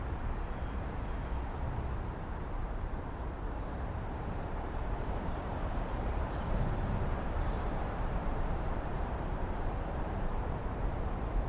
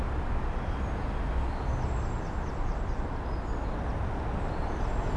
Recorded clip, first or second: second